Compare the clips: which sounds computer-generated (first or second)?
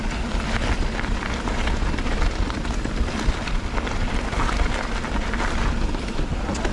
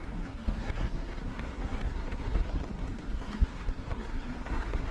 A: second